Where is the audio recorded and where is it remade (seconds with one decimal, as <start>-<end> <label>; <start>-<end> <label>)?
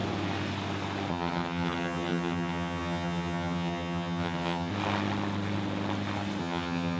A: 0.0-1.1 recorded; 1.1-4.7 remade; 4.7-6.4 recorded; 6.4-7.0 remade